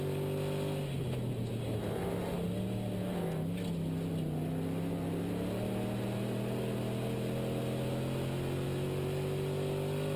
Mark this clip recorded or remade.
recorded